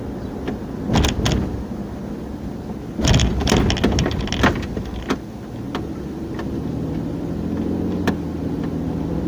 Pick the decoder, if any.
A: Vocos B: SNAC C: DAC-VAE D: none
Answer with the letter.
D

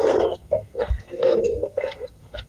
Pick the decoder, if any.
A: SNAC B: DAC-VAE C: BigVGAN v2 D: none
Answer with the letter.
A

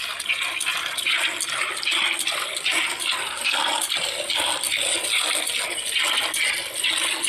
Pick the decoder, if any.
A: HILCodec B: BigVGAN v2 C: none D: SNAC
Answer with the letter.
C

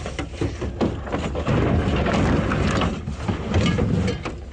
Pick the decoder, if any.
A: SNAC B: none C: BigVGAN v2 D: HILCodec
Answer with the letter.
B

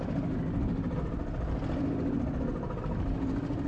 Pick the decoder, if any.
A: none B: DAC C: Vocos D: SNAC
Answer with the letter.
A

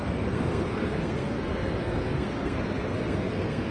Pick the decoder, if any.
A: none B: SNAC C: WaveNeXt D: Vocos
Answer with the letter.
B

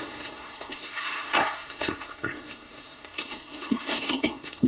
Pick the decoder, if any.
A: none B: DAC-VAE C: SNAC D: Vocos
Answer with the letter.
C